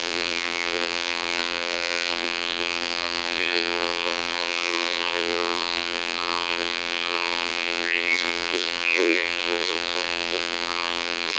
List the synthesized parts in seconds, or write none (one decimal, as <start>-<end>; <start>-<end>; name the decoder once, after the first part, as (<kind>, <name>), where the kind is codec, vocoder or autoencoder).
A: 0.0-11.4 (vocoder, BigVGAN v2)